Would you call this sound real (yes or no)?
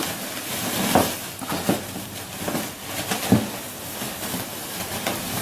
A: yes